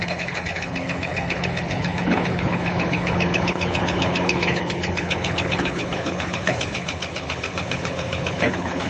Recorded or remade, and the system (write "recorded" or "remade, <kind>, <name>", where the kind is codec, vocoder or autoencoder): remade, codec, HILCodec